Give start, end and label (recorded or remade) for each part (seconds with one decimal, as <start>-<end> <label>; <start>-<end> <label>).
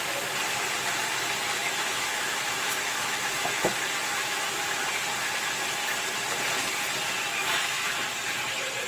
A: 0.0-1.6 recorded; 1.6-3.7 remade; 3.7-4.2 recorded; 4.2-4.8 remade; 4.8-7.4 recorded; 7.4-7.9 remade; 7.9-8.9 recorded